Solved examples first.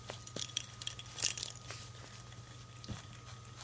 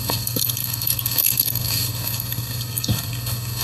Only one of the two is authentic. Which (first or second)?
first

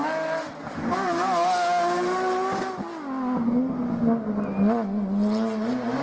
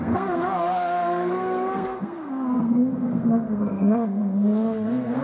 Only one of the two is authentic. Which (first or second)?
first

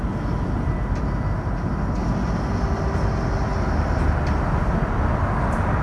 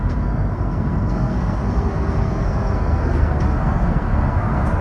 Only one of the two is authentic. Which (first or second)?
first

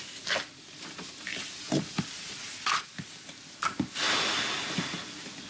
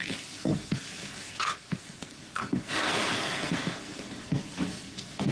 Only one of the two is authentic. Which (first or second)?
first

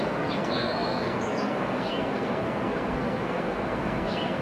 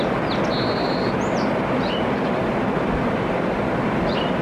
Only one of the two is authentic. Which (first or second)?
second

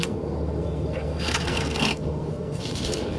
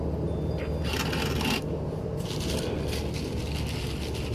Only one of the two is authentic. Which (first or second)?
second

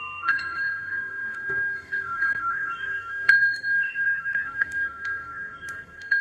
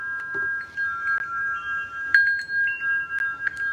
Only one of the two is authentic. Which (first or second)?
second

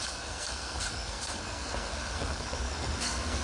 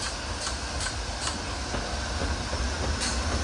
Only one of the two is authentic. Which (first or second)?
second